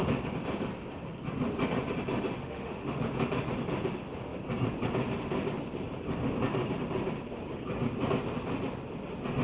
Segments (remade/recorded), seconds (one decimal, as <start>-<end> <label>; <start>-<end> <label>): 0.0-2.4 recorded; 2.4-3.0 remade; 3.0-9.4 recorded